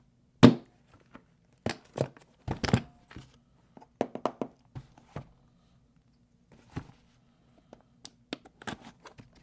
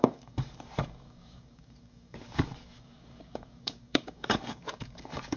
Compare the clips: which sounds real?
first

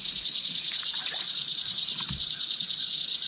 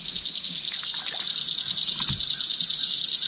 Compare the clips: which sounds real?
second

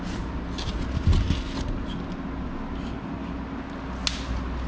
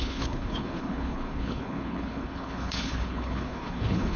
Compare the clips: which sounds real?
first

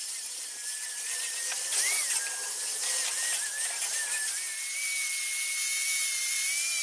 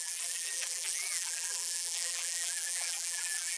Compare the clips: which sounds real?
first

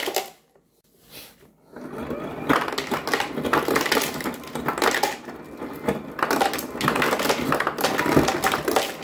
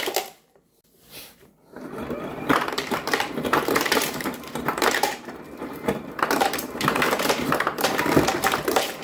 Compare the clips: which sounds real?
first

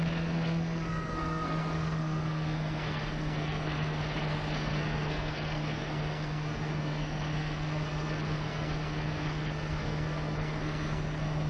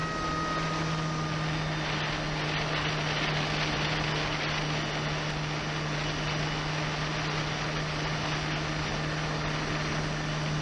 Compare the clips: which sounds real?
second